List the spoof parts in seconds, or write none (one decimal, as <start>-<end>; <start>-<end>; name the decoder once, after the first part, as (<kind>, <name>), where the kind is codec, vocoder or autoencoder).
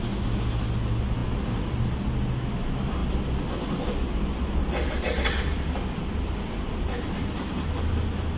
none